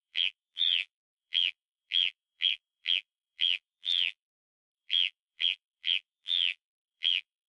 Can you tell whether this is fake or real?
fake